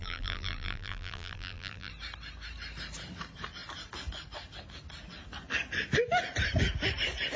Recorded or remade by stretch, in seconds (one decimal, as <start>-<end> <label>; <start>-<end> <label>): 0.0-1.9 remade; 1.9-7.4 recorded